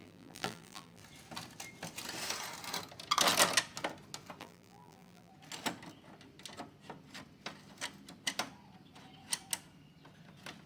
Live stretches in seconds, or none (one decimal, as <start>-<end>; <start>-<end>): 1.0-4.4; 5.3-10.7